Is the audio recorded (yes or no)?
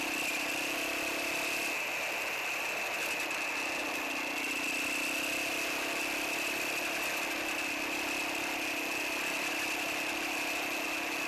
yes